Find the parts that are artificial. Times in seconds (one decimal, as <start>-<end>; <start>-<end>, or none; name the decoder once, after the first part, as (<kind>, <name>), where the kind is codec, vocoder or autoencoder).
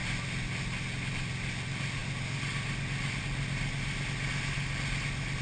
none